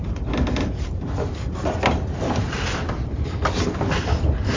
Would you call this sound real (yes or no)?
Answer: yes